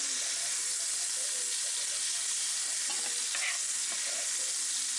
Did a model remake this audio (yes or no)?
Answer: no